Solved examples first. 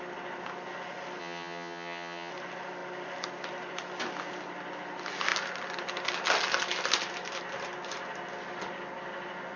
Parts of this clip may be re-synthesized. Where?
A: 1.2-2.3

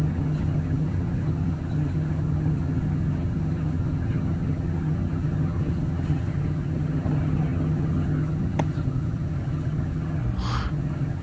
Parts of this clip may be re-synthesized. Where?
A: 0.0-10.2; 10.7-11.2